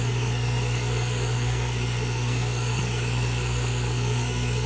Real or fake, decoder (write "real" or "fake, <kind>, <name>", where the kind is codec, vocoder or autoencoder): fake, codec, SNAC